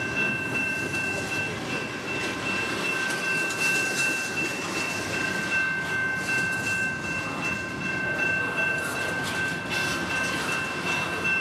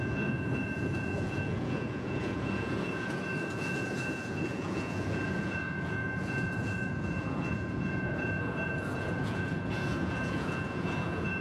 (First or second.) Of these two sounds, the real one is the first